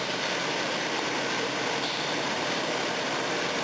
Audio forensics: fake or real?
fake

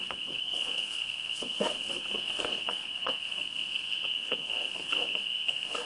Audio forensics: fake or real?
fake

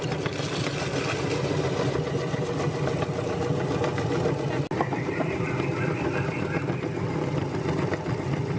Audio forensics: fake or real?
real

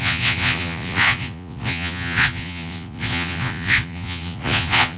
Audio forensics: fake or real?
fake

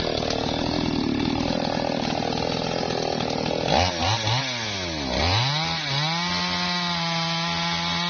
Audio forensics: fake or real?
real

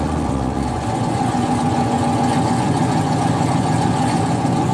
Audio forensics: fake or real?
fake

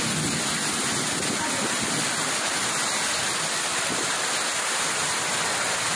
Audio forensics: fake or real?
real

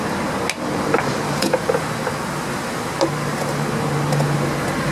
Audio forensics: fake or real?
real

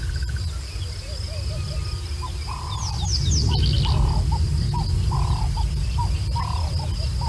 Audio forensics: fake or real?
real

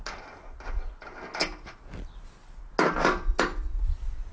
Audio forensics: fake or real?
real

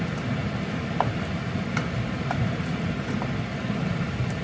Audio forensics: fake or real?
real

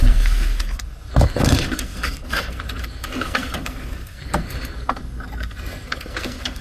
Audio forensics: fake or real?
fake